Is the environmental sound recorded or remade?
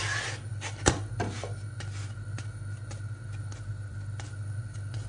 recorded